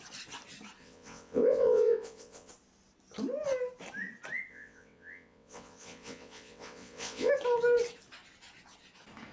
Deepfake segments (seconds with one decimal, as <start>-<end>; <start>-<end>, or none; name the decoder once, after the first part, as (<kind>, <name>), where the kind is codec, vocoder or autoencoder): 0.8-2.5 (vocoder, WaveNeXt); 4.5-7.3